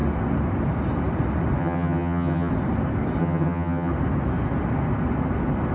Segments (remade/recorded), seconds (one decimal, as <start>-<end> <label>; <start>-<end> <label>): 0.0-1.6 recorded; 1.6-2.5 remade; 2.5-3.2 recorded; 3.2-3.9 remade; 3.9-5.7 recorded